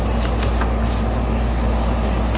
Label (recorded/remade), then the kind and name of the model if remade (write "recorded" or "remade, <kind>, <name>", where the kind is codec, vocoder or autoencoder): recorded